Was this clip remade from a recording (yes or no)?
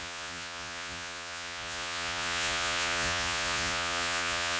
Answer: yes